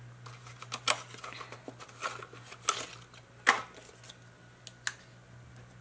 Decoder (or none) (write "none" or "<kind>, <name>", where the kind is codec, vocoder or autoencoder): none